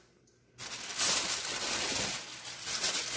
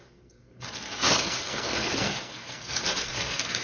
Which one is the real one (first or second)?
first